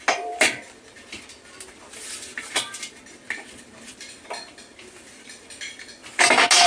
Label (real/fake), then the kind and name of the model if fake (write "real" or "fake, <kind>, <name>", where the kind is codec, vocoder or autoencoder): real